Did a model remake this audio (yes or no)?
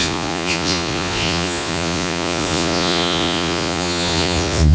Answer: yes